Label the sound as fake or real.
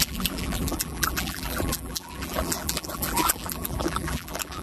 fake